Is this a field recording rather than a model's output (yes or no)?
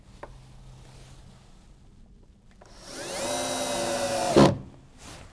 yes